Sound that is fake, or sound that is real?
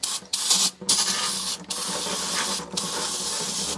real